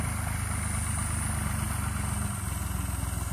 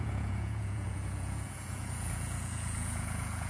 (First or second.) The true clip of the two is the first